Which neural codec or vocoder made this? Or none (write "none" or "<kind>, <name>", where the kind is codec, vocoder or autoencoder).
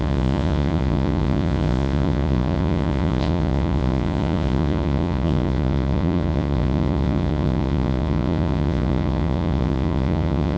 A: vocoder, Vocos